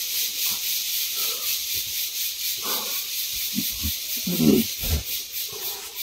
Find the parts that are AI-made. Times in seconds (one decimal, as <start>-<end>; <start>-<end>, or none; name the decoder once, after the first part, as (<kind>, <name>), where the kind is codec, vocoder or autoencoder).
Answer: 0.0-6.0 (vocoder, BigVGAN v2)